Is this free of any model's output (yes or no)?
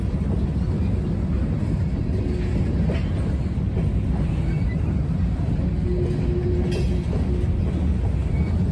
yes